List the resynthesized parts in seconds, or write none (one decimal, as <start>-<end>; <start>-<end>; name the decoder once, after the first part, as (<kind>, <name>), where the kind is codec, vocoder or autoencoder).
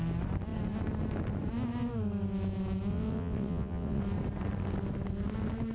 2.9-4.0 (vocoder, WaveNeXt)